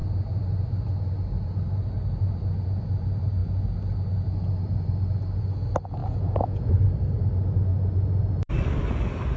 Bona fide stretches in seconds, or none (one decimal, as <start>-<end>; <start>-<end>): 0.0-6.0; 6.7-9.4